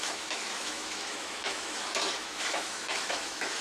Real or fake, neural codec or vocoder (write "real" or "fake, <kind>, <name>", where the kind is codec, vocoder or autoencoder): fake, autoencoder, DAC-VAE